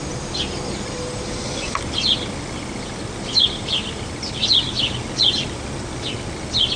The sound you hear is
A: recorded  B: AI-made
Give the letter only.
A